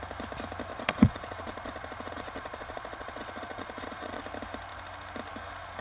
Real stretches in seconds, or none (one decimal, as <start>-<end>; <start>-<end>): 0.0-0.7; 4.2-5.8